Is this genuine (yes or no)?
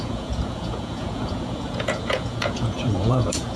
no